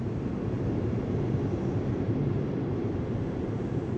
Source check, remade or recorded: remade